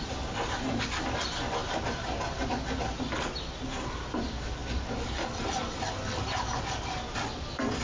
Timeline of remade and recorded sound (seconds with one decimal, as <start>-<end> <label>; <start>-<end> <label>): 0.0-7.8 recorded